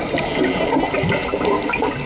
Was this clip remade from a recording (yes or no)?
no